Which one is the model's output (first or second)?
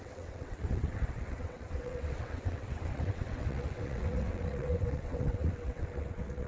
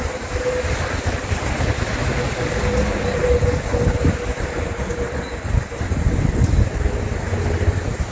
first